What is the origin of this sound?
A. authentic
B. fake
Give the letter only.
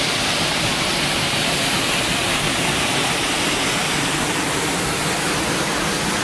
A